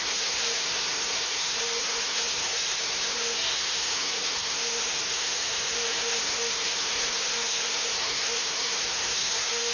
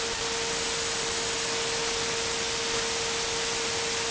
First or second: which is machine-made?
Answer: first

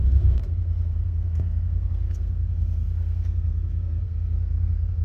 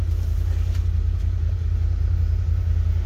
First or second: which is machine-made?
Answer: first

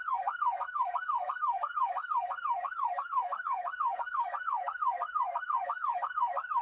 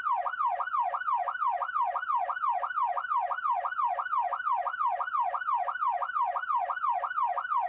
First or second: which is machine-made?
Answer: first